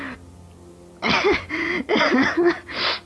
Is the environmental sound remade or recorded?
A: recorded